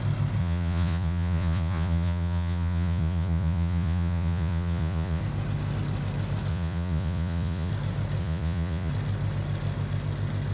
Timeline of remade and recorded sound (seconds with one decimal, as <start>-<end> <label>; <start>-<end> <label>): 0.0-0.4 recorded; 0.4-5.2 remade; 5.2-6.5 recorded; 6.5-7.7 remade; 7.7-8.2 recorded; 8.2-8.9 remade; 8.9-10.5 recorded

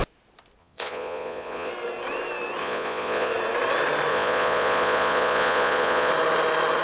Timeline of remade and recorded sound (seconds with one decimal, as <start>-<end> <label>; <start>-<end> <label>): 0.0-0.6 recorded; 0.6-1.7 remade; 1.7-2.6 recorded; 2.6-3.3 remade; 3.3-4.1 recorded; 4.1-6.1 remade; 6.1-6.8 recorded

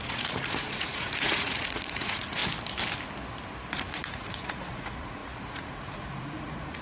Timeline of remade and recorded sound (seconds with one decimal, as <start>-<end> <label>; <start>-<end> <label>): 0.0-2.4 remade; 2.4-3.7 recorded; 3.7-6.8 remade

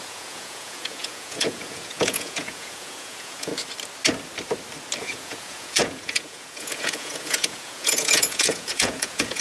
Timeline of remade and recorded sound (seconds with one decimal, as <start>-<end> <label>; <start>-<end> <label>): 0.0-3.5 remade; 3.5-5.0 recorded; 5.0-9.4 remade

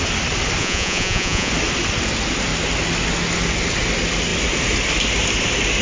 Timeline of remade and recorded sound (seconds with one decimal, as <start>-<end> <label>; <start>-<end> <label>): 0.0-0.6 recorded; 0.6-1.5 remade; 1.5-5.8 recorded